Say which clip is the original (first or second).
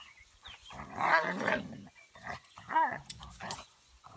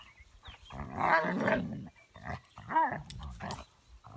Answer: second